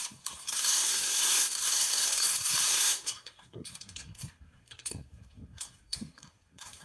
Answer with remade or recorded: remade